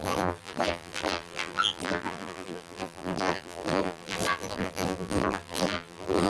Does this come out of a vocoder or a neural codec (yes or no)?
yes